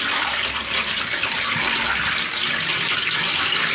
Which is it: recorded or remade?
recorded